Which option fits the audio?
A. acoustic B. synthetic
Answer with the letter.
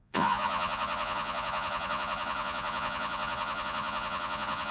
B